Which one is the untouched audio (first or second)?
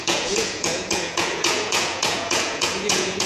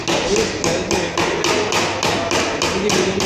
second